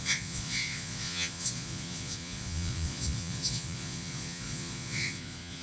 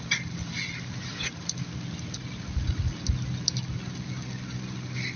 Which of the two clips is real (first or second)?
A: second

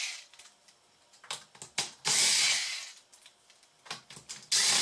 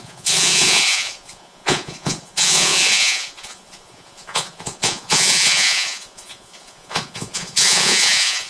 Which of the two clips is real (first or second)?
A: first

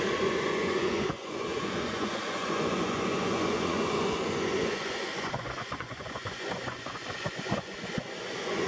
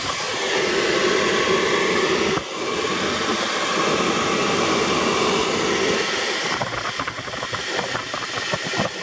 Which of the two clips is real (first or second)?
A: second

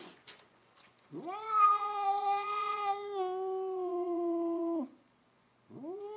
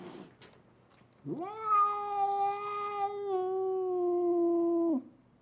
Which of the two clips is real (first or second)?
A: second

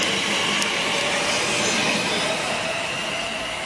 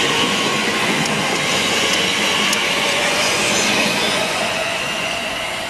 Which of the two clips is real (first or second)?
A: first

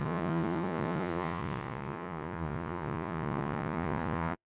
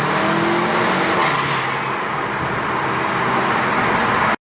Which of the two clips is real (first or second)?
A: second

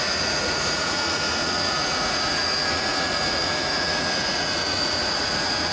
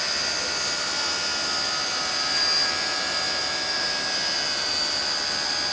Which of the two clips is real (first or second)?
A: second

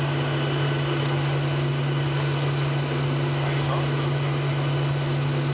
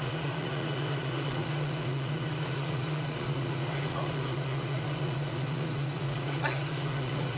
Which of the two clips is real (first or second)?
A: first